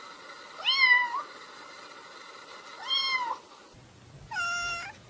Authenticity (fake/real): real